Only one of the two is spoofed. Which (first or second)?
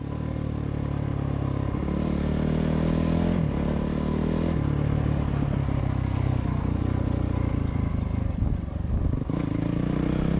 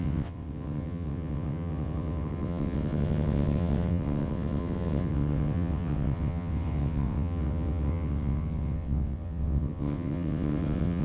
second